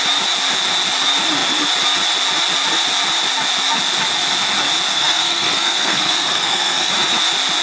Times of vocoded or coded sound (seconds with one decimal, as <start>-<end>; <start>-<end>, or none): 4.9-6.9